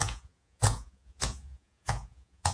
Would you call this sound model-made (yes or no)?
yes